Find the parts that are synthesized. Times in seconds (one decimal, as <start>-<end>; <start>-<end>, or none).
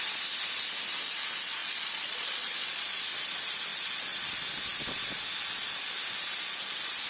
1.6-3.0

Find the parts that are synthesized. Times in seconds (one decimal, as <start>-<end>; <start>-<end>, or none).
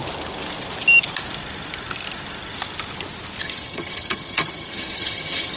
3.4-5.6